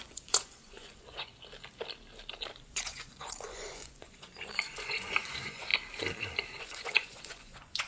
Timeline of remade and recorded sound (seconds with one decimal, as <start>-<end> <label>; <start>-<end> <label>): 0.0-1.3 remade; 1.3-2.6 recorded; 2.6-5.7 remade; 5.7-6.6 recorded; 6.6-7.9 remade